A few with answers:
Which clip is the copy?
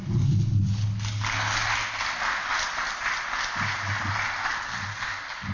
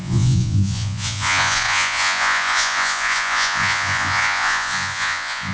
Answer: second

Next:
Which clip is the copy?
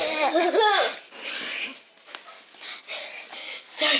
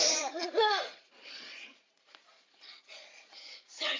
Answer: second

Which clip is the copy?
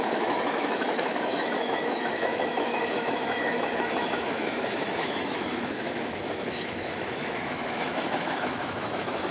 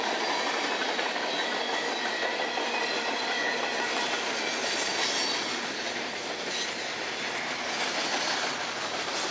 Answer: first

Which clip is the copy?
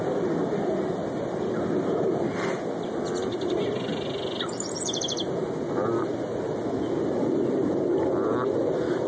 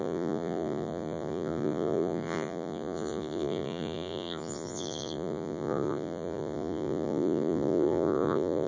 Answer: second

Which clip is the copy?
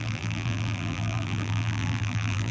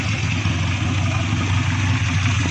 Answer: first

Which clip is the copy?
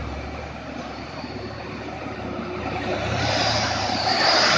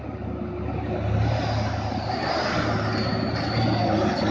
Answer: first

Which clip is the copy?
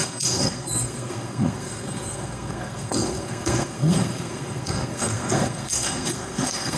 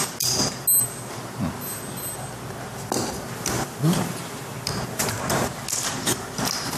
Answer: first